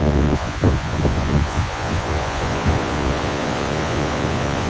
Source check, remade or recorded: remade